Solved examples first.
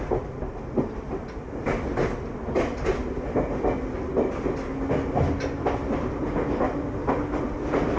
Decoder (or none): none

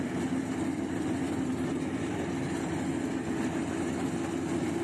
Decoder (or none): none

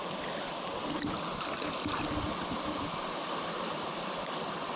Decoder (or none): none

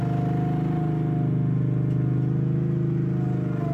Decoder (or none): none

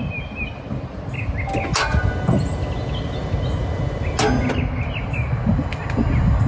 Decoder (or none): none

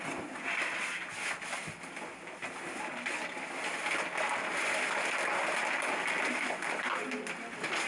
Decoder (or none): none